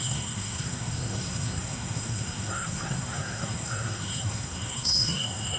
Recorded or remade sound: remade